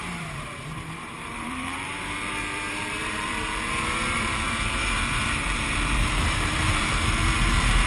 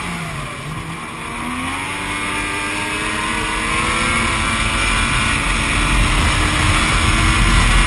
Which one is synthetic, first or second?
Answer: first